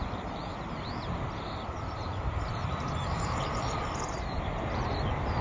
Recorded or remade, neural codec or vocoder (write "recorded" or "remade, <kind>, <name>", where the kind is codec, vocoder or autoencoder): remade, vocoder, BigVGAN v2